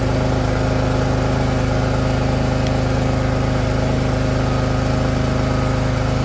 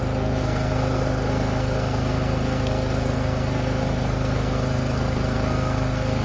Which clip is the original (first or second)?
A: first